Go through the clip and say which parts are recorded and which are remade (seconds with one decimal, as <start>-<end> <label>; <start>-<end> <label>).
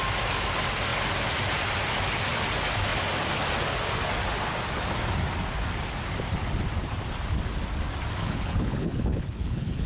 0.0-8.2 recorded; 8.2-9.9 remade